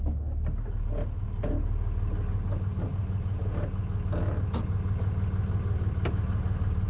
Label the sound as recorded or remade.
recorded